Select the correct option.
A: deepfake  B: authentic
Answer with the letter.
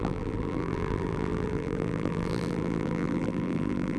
A